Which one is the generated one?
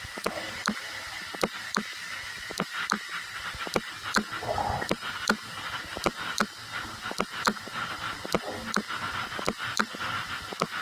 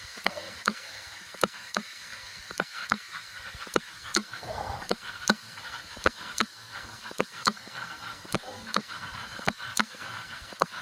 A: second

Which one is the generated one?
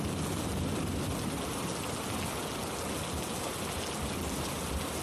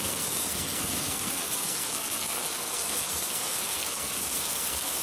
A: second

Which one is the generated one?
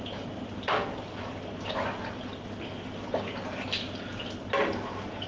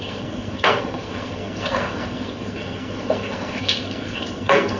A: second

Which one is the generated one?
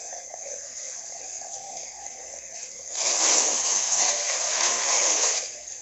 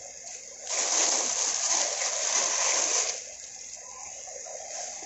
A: first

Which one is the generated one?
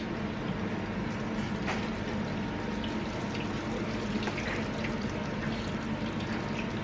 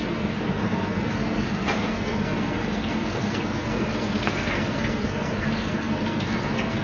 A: second